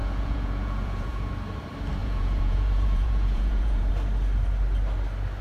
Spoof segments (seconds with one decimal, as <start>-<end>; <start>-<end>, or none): 0.0-1.3; 2.0-3.9